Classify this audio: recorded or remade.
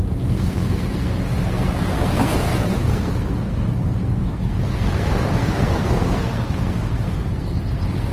remade